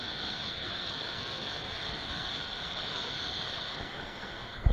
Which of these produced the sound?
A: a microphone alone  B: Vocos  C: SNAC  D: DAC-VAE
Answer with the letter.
C